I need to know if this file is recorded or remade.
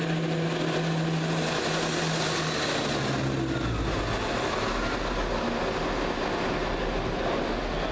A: recorded